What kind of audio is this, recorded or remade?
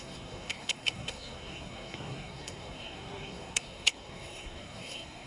remade